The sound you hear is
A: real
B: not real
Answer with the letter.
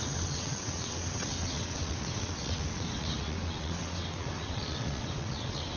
B